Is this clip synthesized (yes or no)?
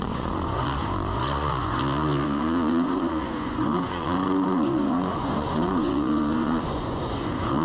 yes